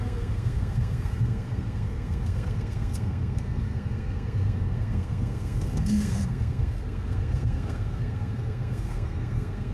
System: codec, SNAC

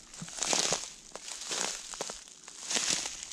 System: none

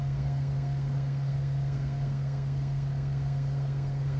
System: codec, SNAC